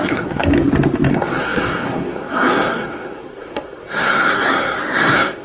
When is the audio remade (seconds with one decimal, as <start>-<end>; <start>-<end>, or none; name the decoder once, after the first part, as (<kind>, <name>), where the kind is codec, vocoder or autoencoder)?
0.0-0.5 (codec, SNAC); 1.1-5.4